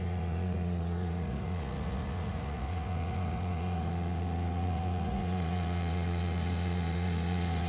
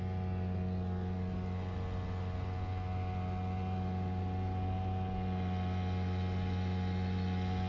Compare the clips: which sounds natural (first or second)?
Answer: second